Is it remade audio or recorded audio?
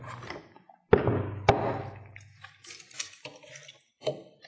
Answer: recorded